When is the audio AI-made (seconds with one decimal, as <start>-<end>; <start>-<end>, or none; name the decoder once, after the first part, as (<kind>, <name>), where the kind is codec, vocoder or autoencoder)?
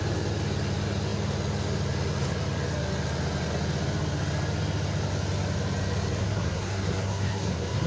6.2-7.9 (codec, SNAC)